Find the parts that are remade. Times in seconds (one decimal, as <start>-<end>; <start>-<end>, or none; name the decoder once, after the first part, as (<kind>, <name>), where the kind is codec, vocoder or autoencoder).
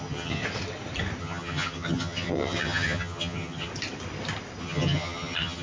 0.0-0.4 (vocoder, HiFi-GAN); 1.2-3.7; 4.6-5.6